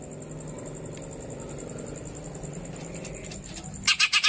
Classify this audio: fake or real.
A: real